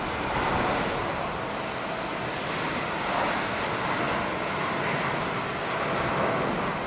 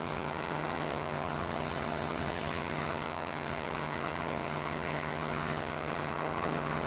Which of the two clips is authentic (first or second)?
first